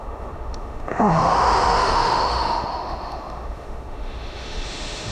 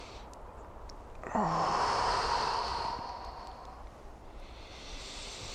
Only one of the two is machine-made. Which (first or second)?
first